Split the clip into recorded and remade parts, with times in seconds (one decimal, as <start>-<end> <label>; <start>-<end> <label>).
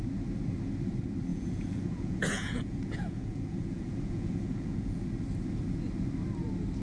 0.0-1.3 recorded; 1.3-5.0 remade; 5.0-6.8 recorded